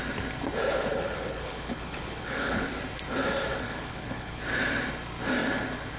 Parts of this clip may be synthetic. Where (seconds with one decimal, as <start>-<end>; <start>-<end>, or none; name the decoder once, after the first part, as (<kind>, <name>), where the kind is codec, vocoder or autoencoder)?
0.9-2.7 (codec, HILCodec); 3.5-4.4